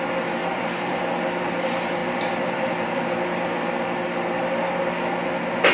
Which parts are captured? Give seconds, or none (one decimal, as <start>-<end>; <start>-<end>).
0.0-0.4; 1.0-2.0; 3.0-5.7